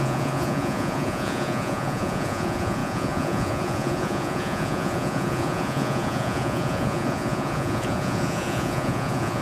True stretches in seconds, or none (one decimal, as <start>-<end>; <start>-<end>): none